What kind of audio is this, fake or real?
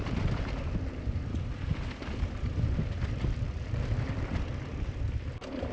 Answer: real